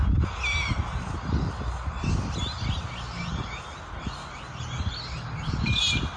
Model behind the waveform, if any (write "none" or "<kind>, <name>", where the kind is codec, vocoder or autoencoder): none